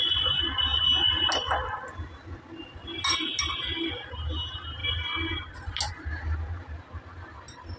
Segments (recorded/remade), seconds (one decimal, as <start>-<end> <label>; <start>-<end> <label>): 0.0-7.8 recorded